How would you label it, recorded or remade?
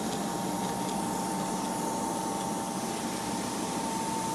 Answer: recorded